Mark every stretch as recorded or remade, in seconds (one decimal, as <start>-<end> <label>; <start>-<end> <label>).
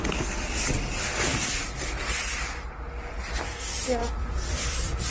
0.0-5.1 recorded